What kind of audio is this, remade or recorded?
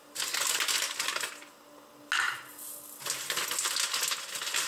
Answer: recorded